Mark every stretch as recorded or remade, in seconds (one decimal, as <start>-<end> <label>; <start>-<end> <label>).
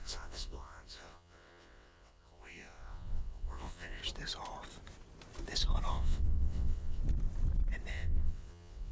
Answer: 0.0-4.0 remade; 4.0-5.9 recorded; 5.9-7.0 remade; 7.0-7.9 recorded; 7.9-8.9 remade